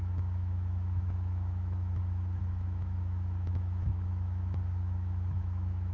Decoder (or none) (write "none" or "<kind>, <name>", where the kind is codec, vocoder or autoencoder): autoencoder, DAC-VAE